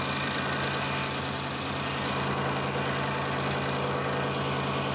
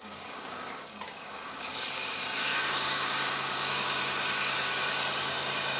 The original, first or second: first